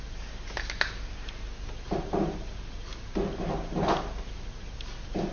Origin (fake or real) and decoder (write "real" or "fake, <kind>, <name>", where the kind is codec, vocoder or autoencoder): real